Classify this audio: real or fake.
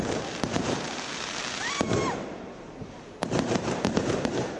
fake